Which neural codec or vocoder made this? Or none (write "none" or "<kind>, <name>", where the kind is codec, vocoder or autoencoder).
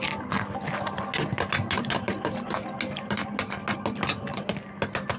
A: none